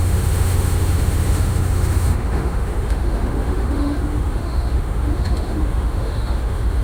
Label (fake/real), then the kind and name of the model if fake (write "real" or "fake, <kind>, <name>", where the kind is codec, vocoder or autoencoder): fake, autoencoder, DAC-VAE